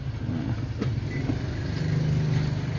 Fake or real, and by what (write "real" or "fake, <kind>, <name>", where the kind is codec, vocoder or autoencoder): real